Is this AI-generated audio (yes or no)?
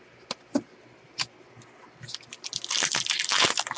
no